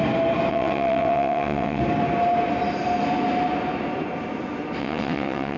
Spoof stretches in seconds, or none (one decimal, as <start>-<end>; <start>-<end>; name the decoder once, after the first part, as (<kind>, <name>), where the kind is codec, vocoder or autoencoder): 0.5-1.8 (vocoder, WaveNeXt); 4.8-5.6